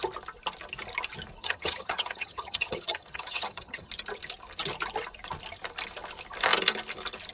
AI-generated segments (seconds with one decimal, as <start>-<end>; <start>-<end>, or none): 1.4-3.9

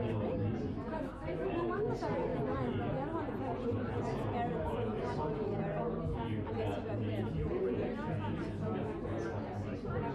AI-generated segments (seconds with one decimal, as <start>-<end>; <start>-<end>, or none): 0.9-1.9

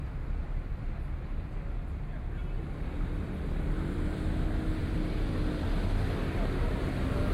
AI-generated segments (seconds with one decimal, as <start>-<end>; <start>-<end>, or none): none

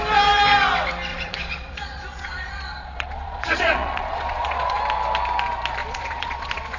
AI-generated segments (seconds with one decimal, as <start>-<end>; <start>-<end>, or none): 1.1-4.8; 5.8-6.8

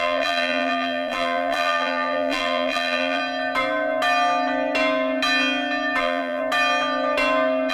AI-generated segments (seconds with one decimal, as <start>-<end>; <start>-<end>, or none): 0.0-3.2; 6.0-6.4